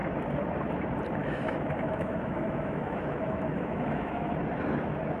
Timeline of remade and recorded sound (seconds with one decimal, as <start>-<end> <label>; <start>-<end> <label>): 0.0-1.2 recorded; 1.2-4.3 remade; 4.3-5.2 recorded